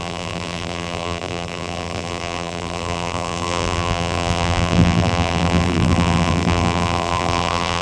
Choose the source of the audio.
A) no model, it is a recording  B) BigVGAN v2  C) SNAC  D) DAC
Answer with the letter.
B